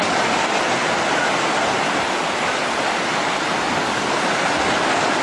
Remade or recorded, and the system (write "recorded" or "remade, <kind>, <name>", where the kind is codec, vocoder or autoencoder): recorded